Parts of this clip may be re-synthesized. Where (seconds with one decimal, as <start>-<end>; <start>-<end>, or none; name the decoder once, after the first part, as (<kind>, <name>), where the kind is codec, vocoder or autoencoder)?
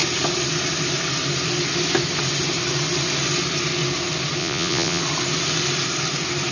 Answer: 4.4-5.0 (vocoder, Vocos)